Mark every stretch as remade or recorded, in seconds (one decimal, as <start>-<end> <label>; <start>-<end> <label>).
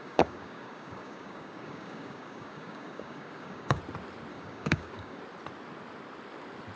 0.0-3.8 remade; 3.8-4.3 recorded; 4.3-5.2 remade; 5.2-6.8 recorded